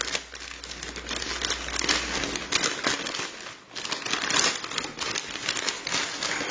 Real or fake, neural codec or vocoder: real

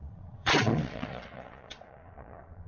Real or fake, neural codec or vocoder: fake, vocoder, Vocos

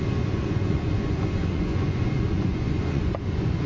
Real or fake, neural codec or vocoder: fake, vocoder, Vocos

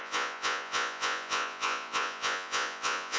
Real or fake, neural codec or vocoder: fake, vocoder, Vocos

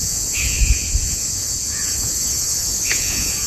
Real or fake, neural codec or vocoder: fake, vocoder, Vocos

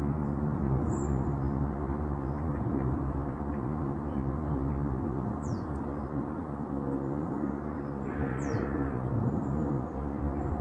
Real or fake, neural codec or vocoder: fake, vocoder, Vocos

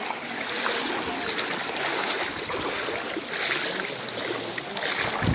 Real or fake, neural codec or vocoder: real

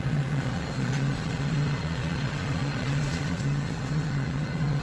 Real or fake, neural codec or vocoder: fake, vocoder, Vocos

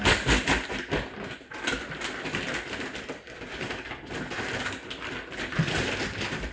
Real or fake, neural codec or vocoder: real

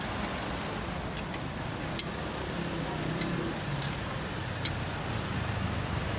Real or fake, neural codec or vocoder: real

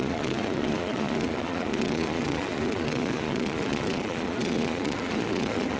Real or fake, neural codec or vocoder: fake, vocoder, Vocos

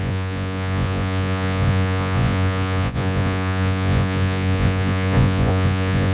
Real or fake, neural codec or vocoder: fake, vocoder, Vocos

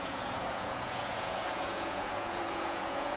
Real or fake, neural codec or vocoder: fake, vocoder, Vocos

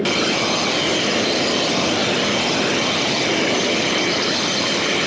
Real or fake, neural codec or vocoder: real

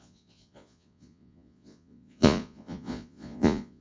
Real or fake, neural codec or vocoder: fake, vocoder, Vocos